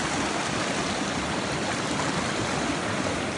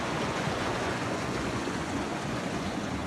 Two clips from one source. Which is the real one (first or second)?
first